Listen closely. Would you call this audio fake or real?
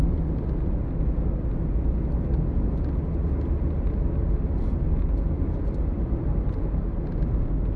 real